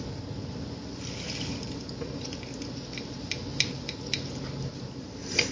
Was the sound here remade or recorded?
recorded